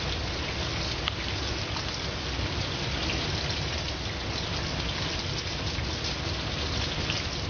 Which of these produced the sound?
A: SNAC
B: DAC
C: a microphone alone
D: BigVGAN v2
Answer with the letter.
C